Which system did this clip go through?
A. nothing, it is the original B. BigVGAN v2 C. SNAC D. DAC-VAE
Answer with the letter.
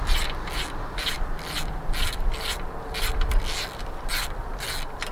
A